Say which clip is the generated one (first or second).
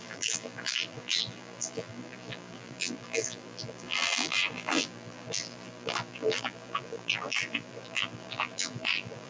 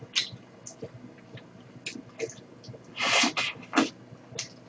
first